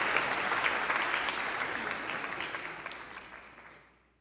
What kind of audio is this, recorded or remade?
recorded